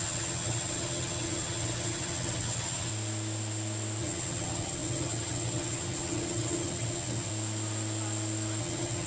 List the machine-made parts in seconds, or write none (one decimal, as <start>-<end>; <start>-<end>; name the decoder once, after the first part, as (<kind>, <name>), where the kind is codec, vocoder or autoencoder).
0.0-2.9 (vocoder, HiFi-GAN); 4.0-7.3; 8.6-9.1